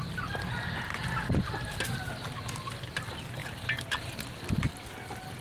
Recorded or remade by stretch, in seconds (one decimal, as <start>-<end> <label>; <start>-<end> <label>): 0.0-0.9 recorded; 0.9-2.1 remade; 2.1-5.4 recorded